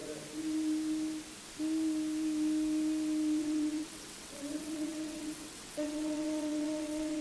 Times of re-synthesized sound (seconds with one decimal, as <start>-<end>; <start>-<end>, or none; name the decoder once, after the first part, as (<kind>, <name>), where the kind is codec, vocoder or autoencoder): 3.4-7.2 (vocoder, WaveNeXt)